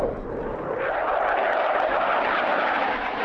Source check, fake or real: real